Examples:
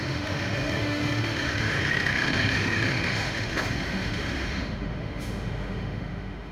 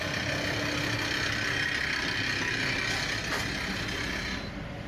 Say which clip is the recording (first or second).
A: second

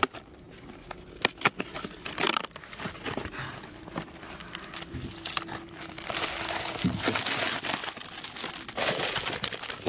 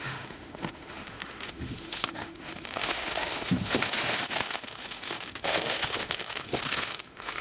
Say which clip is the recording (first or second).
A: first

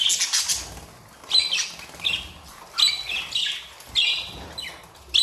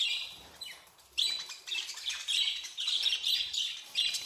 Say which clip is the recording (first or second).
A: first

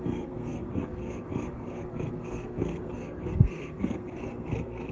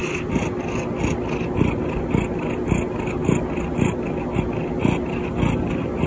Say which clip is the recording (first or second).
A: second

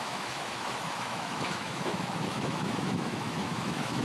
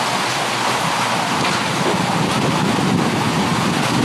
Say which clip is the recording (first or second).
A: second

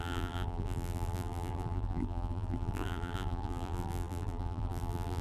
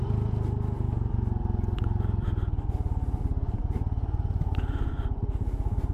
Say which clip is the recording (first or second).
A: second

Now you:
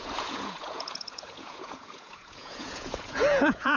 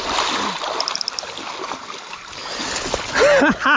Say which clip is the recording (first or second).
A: second